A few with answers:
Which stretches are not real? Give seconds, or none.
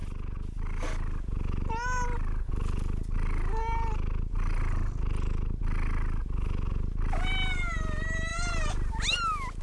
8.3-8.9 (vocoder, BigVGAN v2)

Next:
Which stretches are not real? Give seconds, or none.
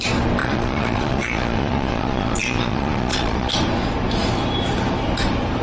0.4-3.5 (vocoder, Vocos)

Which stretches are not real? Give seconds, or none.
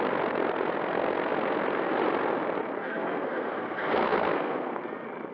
2.8-4.8 (codec, SNAC)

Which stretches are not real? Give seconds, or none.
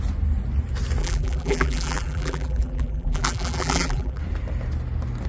1.0-4.2 (vocoder, BigVGAN v2)